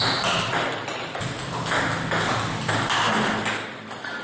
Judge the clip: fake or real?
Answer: real